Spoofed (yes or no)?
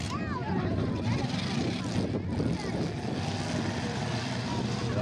no